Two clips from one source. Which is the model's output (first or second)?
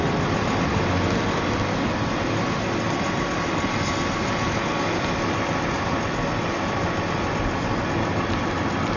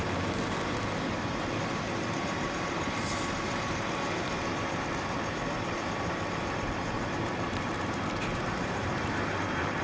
second